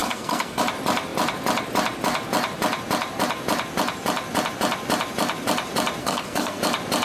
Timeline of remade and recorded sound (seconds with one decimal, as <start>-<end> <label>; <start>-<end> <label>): 0.0-0.6 remade; 0.6-6.0 recorded; 6.0-6.6 remade; 6.6-7.0 recorded